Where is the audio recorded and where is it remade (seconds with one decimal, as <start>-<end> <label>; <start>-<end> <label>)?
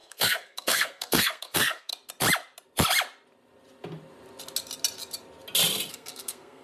0.0-1.9 remade; 1.9-5.9 recorded; 5.9-6.6 remade